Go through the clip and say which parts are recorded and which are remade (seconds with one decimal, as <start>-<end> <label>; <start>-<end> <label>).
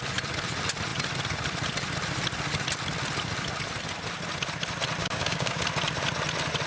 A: 0.0-5.0 recorded; 5.0-5.6 remade; 5.6-6.7 recorded